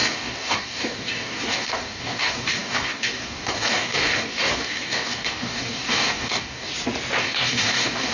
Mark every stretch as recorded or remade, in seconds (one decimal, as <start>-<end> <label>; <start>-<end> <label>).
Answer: 0.0-6.7 remade; 6.7-7.2 recorded; 7.2-8.1 remade